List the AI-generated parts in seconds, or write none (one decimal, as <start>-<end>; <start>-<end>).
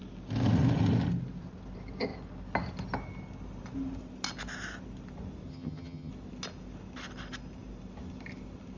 5.5-6.1